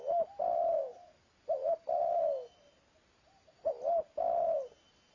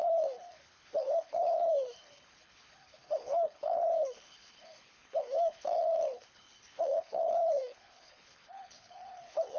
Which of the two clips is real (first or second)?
first